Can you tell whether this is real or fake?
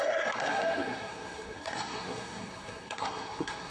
fake